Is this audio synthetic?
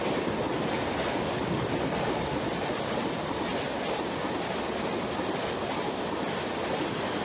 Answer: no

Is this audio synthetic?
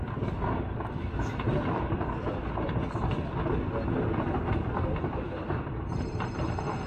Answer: no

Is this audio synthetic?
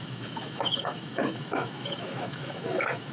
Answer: yes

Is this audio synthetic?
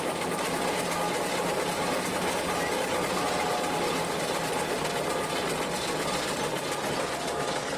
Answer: no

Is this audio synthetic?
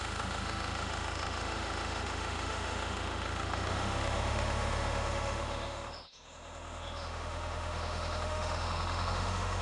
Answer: yes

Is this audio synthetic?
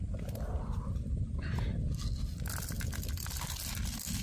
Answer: no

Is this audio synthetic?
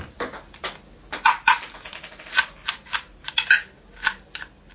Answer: no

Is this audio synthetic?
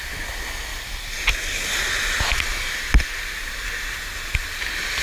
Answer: no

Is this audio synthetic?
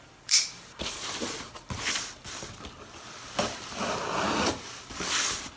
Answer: no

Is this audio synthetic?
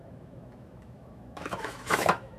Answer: yes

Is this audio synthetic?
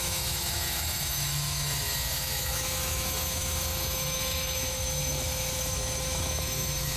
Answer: yes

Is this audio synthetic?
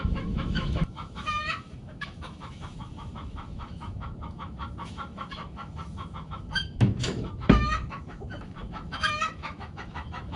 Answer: yes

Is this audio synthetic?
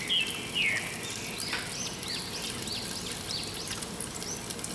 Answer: no